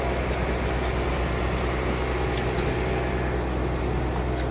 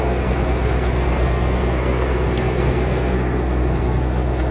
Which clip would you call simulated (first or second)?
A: second